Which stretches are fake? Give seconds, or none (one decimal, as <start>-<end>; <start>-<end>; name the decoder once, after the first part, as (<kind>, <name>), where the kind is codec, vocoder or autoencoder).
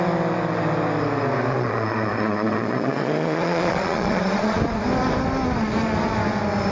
1.5-4.6 (vocoder, Vocos)